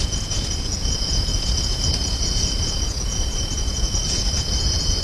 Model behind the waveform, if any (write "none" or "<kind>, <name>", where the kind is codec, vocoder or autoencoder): vocoder, Vocos